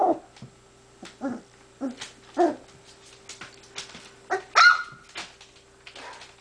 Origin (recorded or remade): recorded